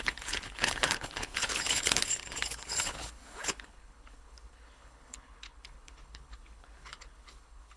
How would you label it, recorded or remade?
remade